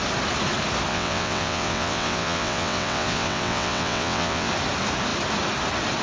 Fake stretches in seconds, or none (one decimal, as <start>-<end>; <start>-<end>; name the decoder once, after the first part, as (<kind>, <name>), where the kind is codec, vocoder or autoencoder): 0.9-4.5 (vocoder, WaveNeXt)